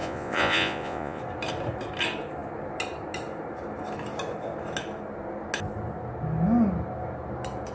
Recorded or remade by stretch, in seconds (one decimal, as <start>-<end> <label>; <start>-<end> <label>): 0.0-1.2 remade; 1.2-7.7 recorded